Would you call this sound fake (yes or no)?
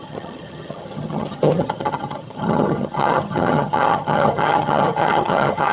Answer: yes